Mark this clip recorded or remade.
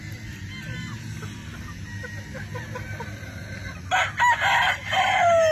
recorded